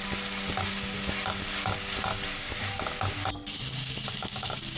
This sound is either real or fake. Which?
real